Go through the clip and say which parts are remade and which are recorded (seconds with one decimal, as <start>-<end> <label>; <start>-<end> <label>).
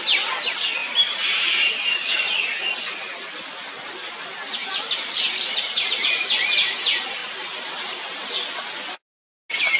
0.0-0.8 recorded; 0.8-2.3 remade; 2.3-4.6 recorded; 4.6-6.3 remade; 6.3-7.2 recorded; 7.2-8.2 remade; 8.2-9.8 recorded